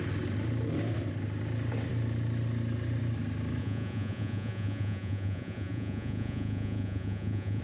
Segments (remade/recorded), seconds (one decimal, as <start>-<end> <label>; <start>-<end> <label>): 0.0-3.6 recorded; 3.6-7.6 remade